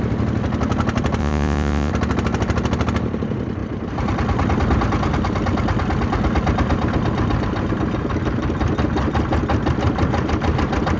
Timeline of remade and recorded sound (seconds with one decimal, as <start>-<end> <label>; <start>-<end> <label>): 0.0-1.2 recorded; 1.2-1.9 remade; 1.9-11.0 recorded